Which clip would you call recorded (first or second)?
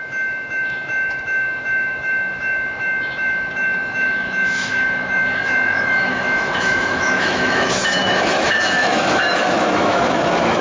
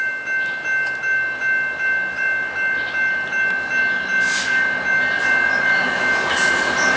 second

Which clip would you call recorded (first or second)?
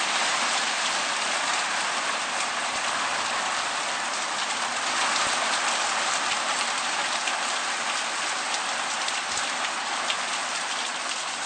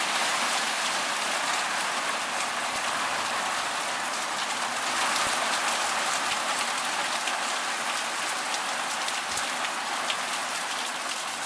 second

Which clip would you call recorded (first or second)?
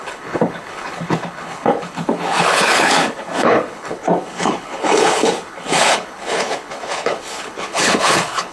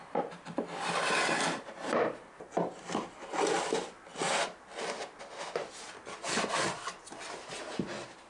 second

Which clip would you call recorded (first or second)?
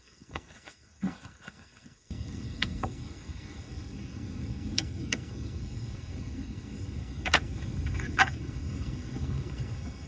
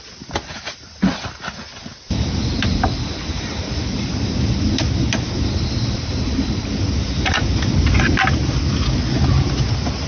second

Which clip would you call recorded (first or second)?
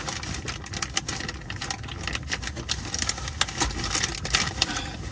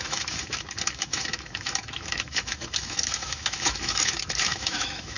first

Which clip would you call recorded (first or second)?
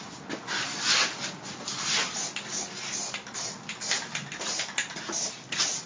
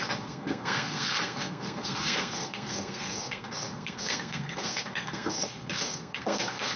first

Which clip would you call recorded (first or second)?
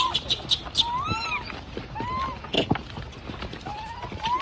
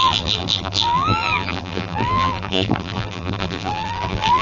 first